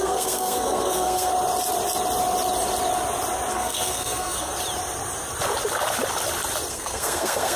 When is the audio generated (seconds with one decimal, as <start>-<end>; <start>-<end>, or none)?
0.0-1.3; 3.5-4.5; 6.7-7.6

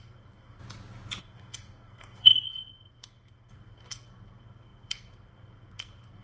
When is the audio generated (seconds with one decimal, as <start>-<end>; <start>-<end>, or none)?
0.0-0.6; 1.2-6.2

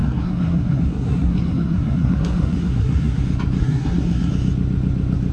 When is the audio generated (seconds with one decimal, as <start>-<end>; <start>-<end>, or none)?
0.0-3.2; 3.6-4.3

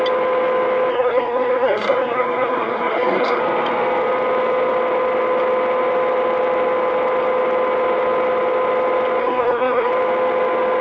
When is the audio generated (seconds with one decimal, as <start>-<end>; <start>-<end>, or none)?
0.9-3.4; 9.2-9.9

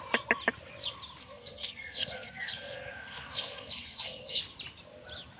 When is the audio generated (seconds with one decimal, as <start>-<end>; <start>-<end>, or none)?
1.2-4.4

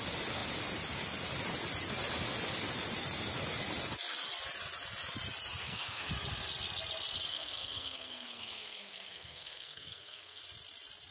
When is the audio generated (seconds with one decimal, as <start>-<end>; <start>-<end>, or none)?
5.6-6.1; 7.3-10.4